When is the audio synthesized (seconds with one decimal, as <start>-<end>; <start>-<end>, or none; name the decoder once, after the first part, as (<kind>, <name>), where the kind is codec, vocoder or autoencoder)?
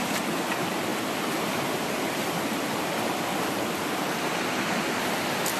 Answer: 0.9-4.2 (vocoder, BigVGAN v2)